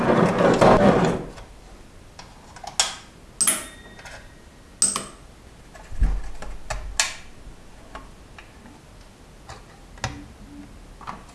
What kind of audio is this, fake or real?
real